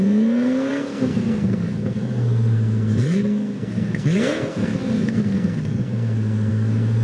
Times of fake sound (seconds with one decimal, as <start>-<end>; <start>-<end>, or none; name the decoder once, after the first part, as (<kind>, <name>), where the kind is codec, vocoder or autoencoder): 0.0-7.0 (codec, SNAC)